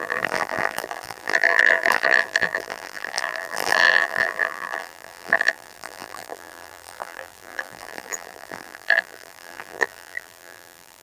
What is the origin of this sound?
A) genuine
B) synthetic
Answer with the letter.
B